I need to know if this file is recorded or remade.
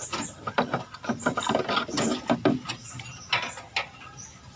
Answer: recorded